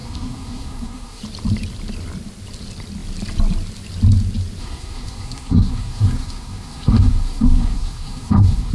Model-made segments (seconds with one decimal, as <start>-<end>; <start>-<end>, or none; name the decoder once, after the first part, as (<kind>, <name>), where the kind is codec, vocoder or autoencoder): 0.0-1.2 (codec, SNAC); 4.6-8.7

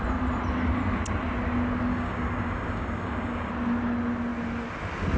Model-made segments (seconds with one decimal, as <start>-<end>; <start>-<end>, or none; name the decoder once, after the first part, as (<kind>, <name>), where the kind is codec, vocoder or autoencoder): 1.9-3.5 (codec, DAC)

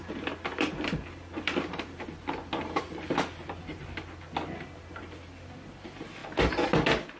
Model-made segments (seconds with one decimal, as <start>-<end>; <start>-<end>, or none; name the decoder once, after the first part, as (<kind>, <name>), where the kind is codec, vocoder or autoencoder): 0.0-2.4 (vocoder, BigVGAN v2); 5.0-6.2

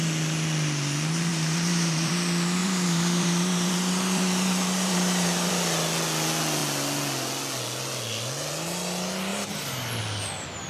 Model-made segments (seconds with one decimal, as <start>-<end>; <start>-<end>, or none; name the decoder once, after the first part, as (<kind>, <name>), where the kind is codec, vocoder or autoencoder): 1.3-2.1 (vocoder, BigVGAN v2); 2.6-5.5

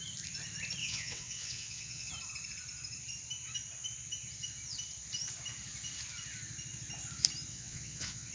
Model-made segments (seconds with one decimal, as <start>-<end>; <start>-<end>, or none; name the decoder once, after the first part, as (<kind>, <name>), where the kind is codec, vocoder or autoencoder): 0.8-2.1 (vocoder, WaveNeXt); 7.5-8.3

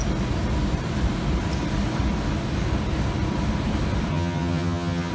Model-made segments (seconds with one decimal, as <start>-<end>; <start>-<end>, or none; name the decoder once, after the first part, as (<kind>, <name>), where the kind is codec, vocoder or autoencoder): 4.1-5.1 (vocoder, HiFi-GAN)

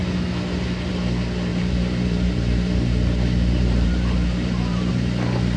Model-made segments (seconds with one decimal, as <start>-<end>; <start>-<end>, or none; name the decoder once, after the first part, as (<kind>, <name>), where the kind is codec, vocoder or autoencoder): 1.5-4.9 (vocoder, BigVGAN v2)